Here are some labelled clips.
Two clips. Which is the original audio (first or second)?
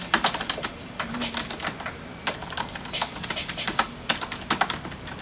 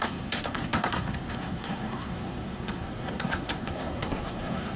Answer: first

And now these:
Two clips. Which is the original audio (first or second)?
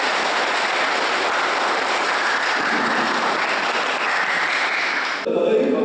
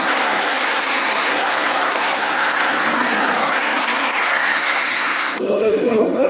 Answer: first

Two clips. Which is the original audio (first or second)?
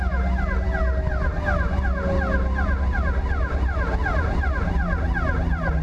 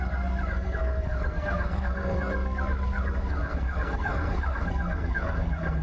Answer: first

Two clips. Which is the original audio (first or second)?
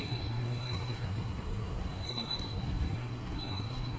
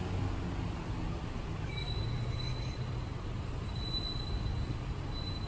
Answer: second